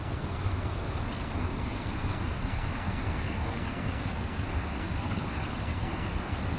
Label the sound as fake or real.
fake